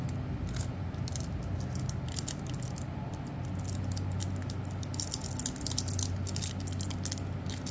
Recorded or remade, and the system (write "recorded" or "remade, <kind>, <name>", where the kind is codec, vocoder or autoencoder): recorded